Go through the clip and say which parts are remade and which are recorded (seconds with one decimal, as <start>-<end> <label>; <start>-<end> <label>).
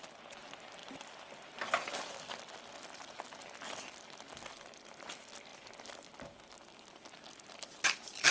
0.0-8.3 recorded